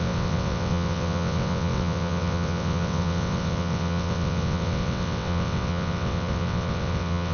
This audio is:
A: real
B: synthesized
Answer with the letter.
B